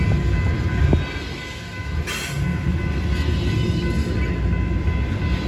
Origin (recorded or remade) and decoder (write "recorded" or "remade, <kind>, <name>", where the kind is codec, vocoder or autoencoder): recorded